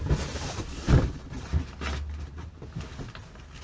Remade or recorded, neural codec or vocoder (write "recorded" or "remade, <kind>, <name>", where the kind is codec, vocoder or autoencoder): recorded